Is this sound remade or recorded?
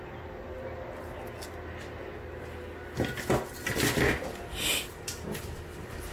recorded